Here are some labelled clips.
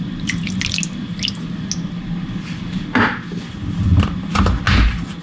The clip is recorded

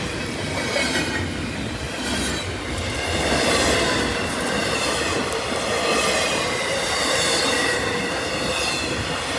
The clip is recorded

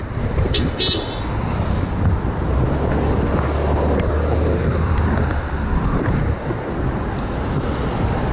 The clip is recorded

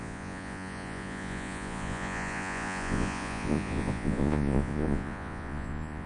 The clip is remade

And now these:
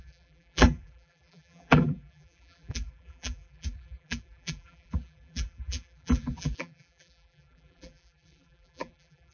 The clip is remade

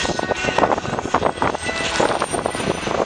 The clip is recorded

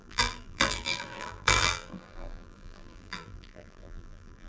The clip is remade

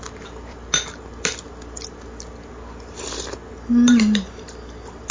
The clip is recorded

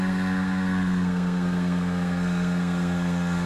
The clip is remade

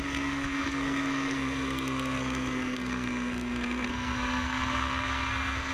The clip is remade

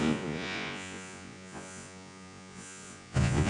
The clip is remade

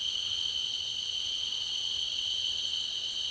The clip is remade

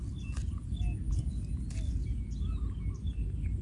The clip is recorded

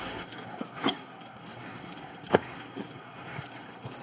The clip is remade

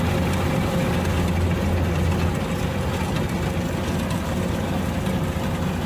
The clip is recorded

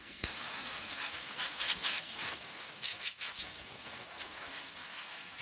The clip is remade